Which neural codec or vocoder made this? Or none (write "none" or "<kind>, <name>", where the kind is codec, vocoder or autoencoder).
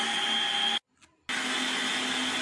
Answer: none